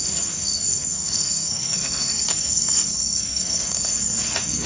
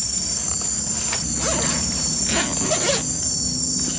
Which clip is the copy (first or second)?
first